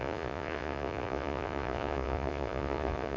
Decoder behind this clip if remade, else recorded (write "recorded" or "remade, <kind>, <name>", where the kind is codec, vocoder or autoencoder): remade, vocoder, Vocos